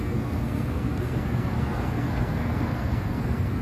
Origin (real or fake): fake